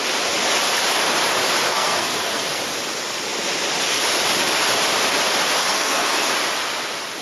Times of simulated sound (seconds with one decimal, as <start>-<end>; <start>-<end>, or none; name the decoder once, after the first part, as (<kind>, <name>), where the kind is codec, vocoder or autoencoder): 1.7-2.6 (codec, SNAC); 5.6-6.3